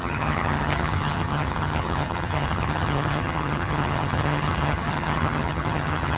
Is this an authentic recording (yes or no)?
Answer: no